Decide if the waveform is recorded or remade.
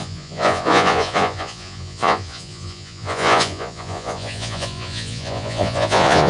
remade